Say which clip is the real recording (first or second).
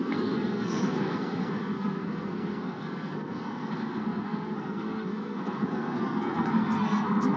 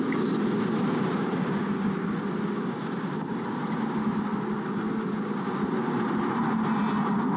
second